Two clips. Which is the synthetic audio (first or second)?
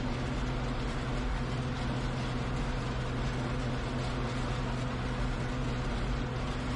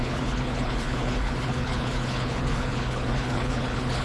second